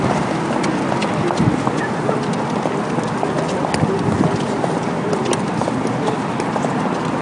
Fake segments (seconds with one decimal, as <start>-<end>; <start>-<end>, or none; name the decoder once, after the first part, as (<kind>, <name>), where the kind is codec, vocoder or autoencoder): none